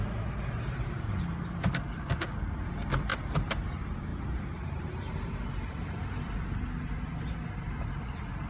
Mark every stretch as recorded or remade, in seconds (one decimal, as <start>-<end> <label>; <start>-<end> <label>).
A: 0.0-8.5 recorded